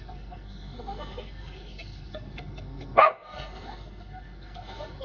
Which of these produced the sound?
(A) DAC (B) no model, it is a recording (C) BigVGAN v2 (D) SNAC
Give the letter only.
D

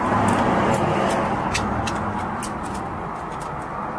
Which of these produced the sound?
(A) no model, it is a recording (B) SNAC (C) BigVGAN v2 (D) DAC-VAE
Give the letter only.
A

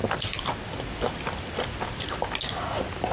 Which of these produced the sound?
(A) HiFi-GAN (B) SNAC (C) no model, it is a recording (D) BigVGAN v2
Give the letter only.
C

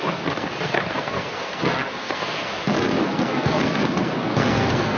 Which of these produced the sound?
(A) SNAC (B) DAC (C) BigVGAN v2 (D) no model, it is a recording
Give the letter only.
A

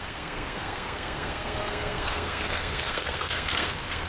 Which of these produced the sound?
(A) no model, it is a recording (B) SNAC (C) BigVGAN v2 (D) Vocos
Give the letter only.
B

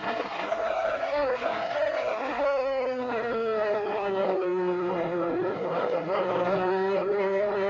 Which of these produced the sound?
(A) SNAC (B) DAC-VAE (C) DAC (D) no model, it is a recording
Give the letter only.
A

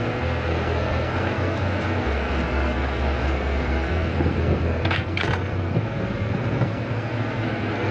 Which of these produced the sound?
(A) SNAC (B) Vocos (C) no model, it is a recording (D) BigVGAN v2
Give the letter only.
A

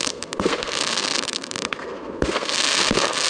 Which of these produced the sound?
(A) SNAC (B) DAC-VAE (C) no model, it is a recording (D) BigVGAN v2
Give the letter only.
A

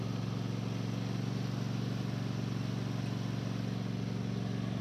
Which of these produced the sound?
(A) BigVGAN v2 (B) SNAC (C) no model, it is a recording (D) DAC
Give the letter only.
C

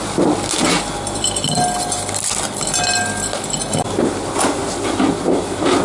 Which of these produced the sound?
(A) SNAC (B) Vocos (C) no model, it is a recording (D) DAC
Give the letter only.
C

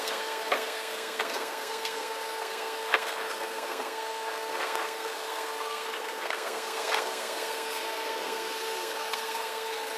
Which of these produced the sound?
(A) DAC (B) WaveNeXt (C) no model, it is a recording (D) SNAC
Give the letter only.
D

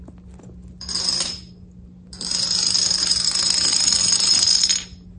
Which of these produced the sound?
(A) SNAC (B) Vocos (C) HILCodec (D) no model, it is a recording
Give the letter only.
D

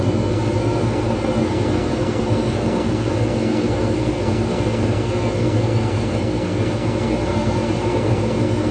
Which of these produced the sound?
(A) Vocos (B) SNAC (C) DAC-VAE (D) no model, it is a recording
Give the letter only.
B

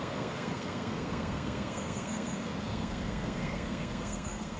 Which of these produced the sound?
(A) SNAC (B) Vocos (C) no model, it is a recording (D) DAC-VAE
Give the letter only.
A